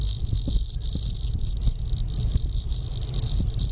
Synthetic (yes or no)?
no